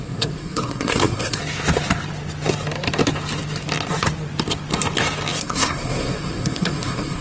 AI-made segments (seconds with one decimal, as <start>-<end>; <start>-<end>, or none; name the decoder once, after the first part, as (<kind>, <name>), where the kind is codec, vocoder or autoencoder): 0.0-1.4 (codec, SNAC); 5.4-7.2